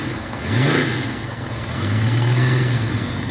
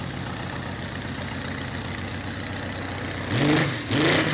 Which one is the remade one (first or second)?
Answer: first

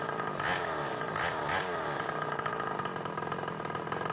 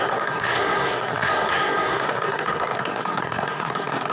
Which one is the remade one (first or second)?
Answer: second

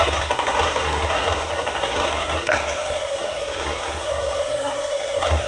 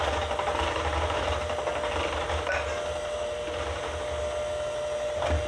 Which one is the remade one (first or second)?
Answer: first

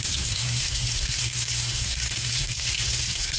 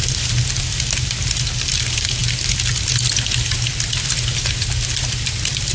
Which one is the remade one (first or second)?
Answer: first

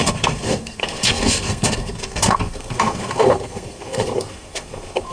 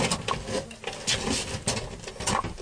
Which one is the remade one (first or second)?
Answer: first